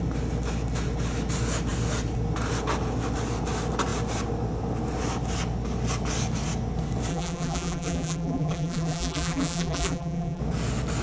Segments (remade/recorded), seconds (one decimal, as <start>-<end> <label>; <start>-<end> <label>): 0.0-7.1 recorded; 7.1-10.4 remade; 10.4-11.0 recorded